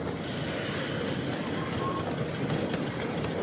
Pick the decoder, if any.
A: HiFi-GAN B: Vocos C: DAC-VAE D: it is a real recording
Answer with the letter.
D